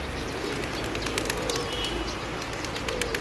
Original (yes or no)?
yes